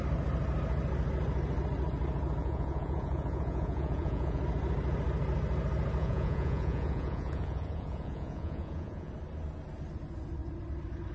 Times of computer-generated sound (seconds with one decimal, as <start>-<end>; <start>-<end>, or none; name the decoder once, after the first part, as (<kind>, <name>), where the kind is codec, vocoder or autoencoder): 2.4-4.4 (vocoder, Vocos); 6.0-9.1